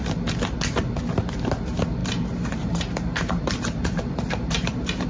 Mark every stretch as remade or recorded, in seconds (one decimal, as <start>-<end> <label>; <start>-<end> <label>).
0.0-2.0 recorded; 2.0-5.1 remade